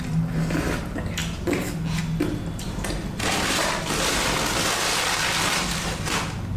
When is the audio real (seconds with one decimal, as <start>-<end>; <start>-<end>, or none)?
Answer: 0.0-6.6